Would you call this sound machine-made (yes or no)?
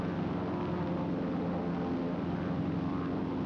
no